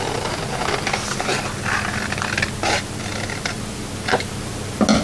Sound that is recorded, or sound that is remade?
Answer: recorded